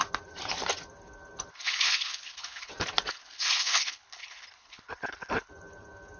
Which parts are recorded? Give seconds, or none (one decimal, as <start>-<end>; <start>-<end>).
0.0-1.5; 2.7-3.1; 5.5-6.2